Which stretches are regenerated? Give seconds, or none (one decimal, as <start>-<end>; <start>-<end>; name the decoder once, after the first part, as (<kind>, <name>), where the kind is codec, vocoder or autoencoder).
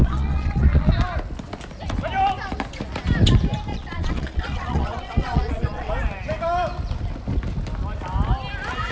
0.0-0.9 (vocoder, Vocos); 3.7-5.9